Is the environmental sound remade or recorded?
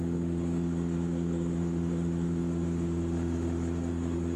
remade